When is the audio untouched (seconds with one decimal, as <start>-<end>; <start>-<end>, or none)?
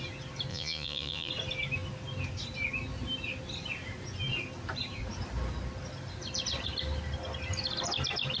0.0-0.5; 1.3-8.4